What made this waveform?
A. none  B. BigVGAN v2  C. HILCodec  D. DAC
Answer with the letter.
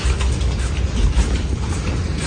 A